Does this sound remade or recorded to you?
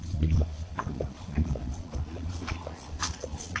remade